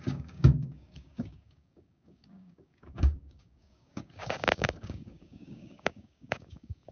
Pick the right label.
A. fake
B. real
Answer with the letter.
A